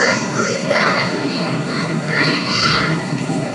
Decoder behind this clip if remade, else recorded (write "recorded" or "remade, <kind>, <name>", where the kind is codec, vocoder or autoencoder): remade, codec, SNAC